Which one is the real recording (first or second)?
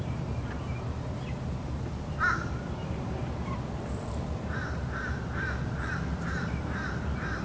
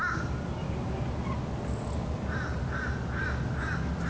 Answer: second